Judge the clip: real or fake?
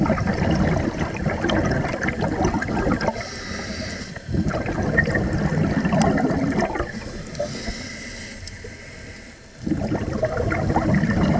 real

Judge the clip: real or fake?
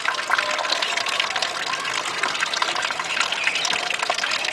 real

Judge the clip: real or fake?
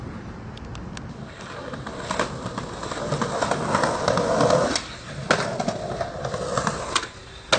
real